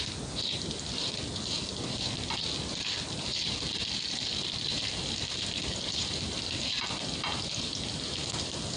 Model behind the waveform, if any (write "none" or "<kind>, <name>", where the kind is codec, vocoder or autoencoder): none